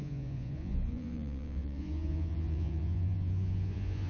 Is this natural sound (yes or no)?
no